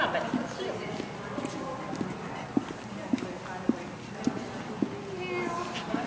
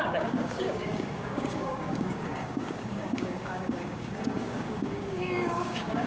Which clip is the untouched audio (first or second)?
first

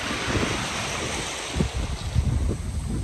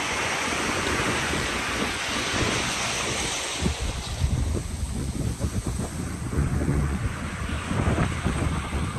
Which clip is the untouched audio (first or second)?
first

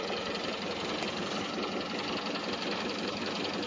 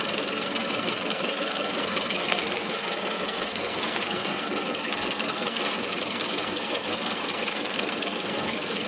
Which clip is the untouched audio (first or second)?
first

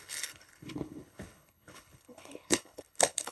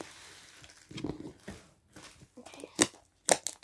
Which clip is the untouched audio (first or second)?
second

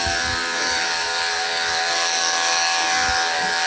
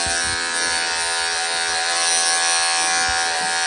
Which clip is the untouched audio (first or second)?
second